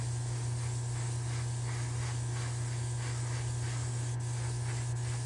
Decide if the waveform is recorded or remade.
recorded